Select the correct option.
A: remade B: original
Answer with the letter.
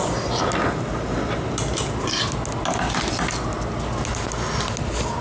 B